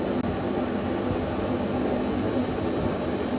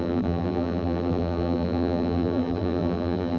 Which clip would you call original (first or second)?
first